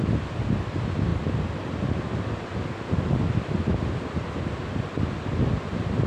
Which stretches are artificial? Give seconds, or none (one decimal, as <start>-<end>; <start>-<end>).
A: none